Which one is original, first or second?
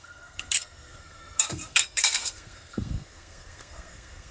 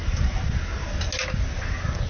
second